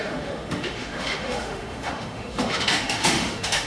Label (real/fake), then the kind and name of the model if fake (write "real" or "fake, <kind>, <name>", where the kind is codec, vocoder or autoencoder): fake, autoencoder, DAC-VAE